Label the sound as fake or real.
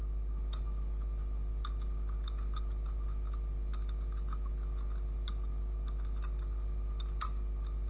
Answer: real